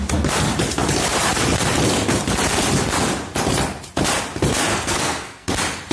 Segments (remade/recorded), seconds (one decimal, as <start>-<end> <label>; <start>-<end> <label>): 0.0-4.7 recorded; 4.7-5.5 remade; 5.5-5.9 recorded